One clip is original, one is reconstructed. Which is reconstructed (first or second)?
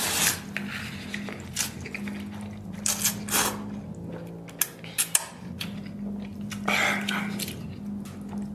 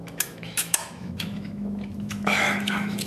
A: second